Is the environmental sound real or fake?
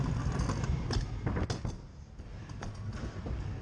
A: real